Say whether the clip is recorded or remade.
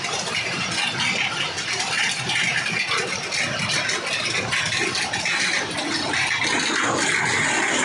recorded